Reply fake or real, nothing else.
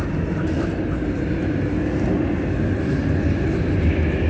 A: real